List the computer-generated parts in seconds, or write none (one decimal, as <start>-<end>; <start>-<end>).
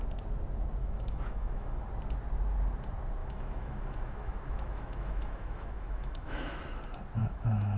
0.8-1.8; 3.2-6.6; 7.2-7.8